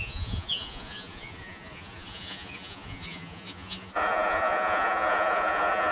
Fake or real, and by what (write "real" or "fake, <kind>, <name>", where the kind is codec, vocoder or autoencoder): fake, vocoder, Vocos